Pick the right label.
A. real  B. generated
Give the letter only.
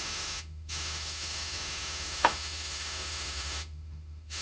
B